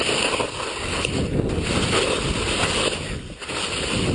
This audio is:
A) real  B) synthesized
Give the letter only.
A